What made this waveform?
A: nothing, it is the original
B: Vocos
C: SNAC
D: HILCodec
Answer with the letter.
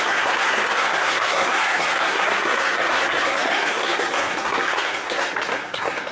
C